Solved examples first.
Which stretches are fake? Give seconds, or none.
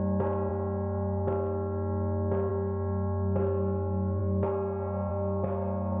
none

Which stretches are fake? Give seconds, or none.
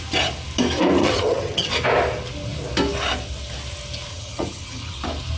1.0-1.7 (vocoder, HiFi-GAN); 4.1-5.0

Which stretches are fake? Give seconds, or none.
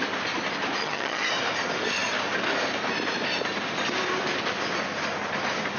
0.8-1.3 (vocoder, HiFi-GAN)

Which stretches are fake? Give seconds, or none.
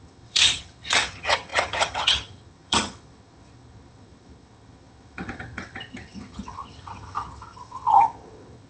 0.0-8.7 (vocoder, HiFi-GAN)